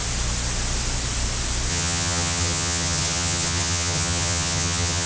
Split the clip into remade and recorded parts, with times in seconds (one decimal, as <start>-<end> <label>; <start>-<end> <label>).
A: 0.0-1.7 recorded; 1.7-5.1 remade